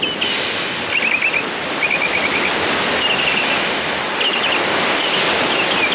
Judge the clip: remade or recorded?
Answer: recorded